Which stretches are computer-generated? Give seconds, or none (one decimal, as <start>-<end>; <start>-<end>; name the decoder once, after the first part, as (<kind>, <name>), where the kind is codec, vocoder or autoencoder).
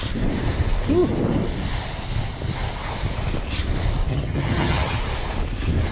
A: 4.1-5.0 (vocoder, HiFi-GAN)